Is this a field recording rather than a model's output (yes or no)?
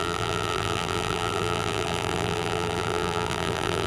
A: no